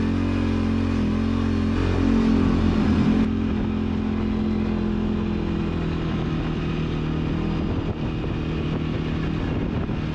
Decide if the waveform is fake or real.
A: real